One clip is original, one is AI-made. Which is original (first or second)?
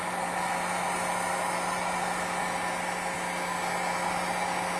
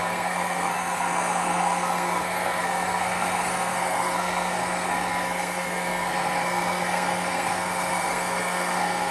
first